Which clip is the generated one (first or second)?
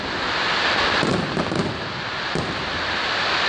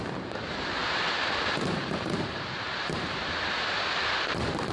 second